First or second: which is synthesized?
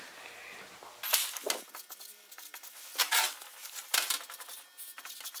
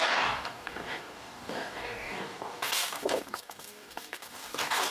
second